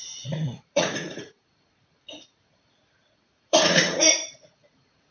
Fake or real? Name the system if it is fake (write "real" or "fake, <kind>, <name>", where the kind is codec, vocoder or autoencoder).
fake, vocoder, Vocos